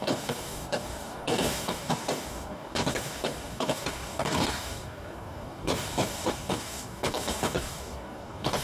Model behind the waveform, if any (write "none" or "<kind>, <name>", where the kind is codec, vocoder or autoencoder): codec, DAC